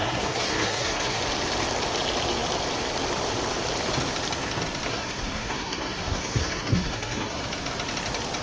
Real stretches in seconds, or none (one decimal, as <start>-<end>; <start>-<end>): 1.2-4.9; 7.4-8.4